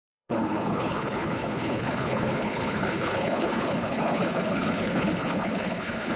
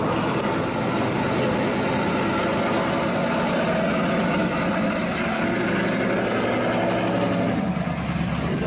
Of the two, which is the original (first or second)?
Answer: second